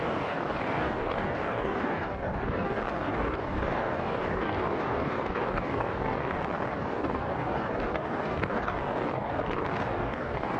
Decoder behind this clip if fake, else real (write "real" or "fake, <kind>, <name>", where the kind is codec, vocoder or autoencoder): fake, codec, DAC